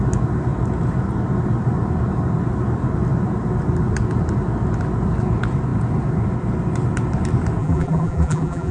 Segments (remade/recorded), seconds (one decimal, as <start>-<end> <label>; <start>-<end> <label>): 0.0-7.6 recorded; 7.6-8.7 remade